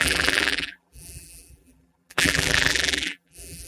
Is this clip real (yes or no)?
no